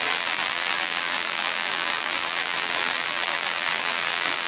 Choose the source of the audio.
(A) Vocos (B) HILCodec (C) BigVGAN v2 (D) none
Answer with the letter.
C